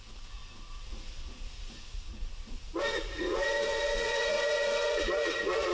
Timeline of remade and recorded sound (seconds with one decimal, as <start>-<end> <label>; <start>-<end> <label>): 0.0-5.7 remade